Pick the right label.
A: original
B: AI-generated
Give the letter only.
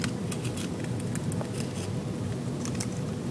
A